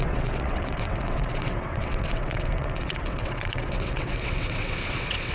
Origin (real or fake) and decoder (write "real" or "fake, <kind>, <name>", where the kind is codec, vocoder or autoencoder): fake, vocoder, WaveNeXt